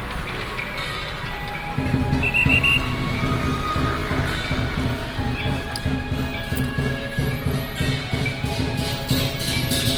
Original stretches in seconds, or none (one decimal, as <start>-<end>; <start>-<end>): 0.0-4.0; 5.5-7.2; 7.9-10.0